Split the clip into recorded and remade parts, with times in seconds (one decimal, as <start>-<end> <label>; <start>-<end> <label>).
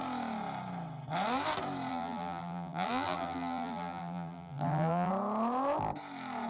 0.0-1.9 recorded; 1.9-5.1 remade; 5.1-6.5 recorded